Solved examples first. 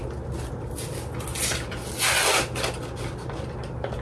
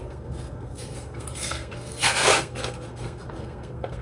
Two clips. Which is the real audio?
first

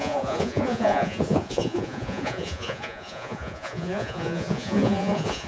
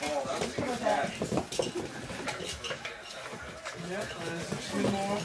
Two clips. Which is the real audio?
second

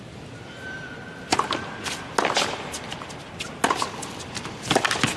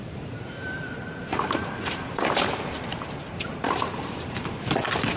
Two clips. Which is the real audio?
first